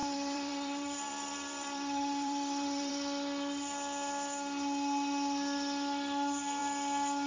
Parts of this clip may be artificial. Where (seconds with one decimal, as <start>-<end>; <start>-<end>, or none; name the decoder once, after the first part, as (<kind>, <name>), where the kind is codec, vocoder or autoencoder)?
0.0-2.9 (vocoder, BigVGAN v2)